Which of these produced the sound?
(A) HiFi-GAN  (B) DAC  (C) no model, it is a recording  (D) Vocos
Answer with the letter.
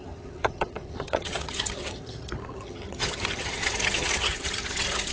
A